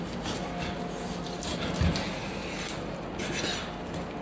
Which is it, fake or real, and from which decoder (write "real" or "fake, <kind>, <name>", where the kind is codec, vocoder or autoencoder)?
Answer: real